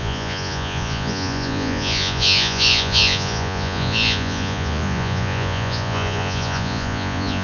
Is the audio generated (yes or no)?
yes